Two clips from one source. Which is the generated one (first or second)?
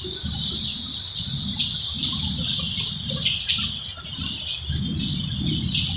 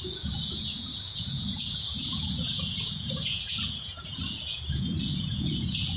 second